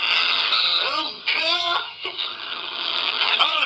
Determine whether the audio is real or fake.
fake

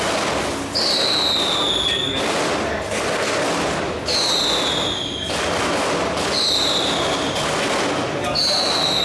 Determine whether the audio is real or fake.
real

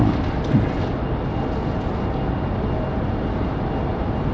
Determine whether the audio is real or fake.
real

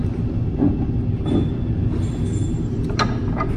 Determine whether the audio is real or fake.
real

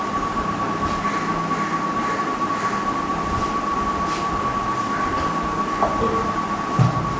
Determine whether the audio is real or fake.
real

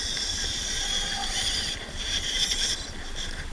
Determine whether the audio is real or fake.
real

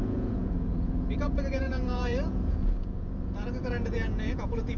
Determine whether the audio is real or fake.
fake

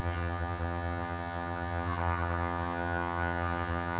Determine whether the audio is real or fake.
fake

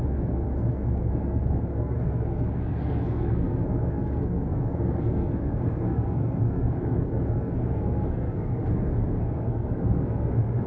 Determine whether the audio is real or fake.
fake